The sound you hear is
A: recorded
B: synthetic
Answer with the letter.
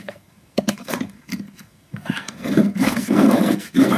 B